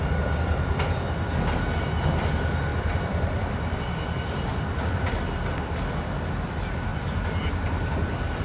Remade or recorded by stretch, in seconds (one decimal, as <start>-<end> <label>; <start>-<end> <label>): 0.0-2.7 recorded; 2.7-4.8 remade; 4.8-6.9 recorded; 6.9-7.5 remade; 7.5-8.4 recorded

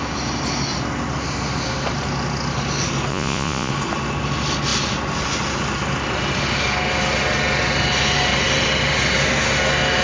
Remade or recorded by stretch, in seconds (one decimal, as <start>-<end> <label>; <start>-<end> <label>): 0.0-3.1 recorded; 3.1-3.7 remade; 3.7-10.0 recorded

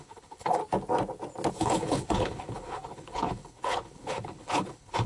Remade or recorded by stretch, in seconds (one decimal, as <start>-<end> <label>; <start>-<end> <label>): 0.0-0.6 remade; 0.6-1.5 recorded; 1.5-5.1 remade

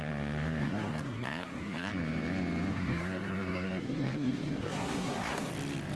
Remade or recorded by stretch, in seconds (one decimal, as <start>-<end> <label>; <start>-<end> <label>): 0.0-0.6 recorded; 0.6-1.9 remade; 1.9-2.7 recorded; 2.7-5.5 remade; 5.5-6.0 recorded

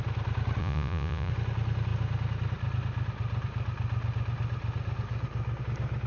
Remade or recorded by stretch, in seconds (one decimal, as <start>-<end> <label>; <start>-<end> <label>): 0.0-0.6 recorded; 0.6-1.3 remade; 1.3-6.1 recorded

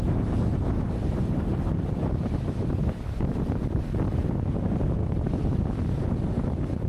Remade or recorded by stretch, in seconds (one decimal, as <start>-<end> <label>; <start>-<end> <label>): 0.0-2.0 recorded; 2.0-3.8 remade; 3.8-6.9 recorded

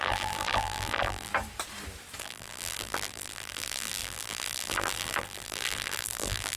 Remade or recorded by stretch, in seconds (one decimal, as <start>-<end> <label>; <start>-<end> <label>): 0.0-1.3 remade; 1.3-2.2 recorded; 2.2-6.6 remade